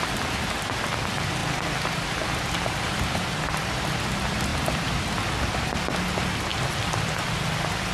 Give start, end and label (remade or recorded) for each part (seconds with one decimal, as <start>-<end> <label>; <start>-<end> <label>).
0.0-1.4 recorded; 1.4-3.0 remade; 3.0-6.5 recorded; 6.5-7.2 remade; 7.2-7.9 recorded